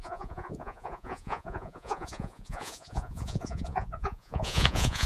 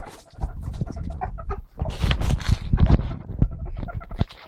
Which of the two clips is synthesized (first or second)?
first